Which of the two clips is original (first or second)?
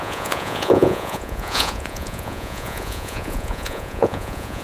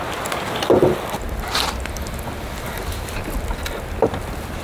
second